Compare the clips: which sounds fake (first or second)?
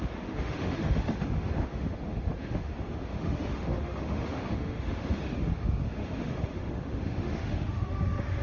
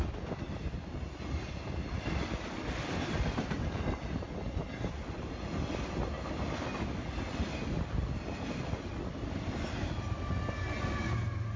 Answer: first